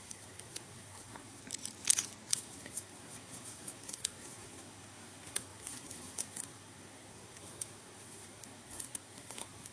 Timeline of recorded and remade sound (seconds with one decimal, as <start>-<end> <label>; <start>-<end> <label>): 0.0-1.4 remade; 1.4-2.3 recorded; 2.3-9.7 remade